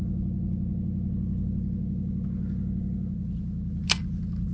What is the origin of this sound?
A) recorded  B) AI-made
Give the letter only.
A